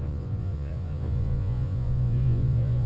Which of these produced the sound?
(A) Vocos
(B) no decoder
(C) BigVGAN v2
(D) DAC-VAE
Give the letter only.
A